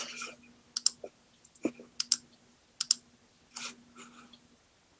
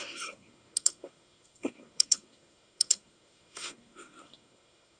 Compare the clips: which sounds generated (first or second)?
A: second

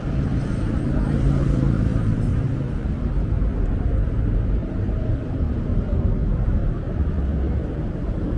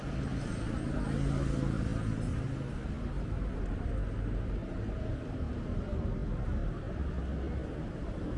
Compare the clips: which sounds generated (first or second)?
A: first